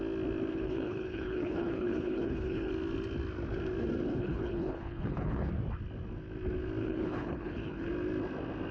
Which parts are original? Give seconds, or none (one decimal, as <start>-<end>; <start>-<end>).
0.0-0.5; 2.7-4.1; 5.5-6.8; 7.9-8.7